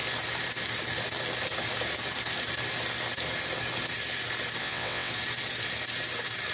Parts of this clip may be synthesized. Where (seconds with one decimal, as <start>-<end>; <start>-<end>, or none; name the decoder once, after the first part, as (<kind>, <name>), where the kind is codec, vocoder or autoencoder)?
4.6-5.1 (vocoder, WaveNeXt)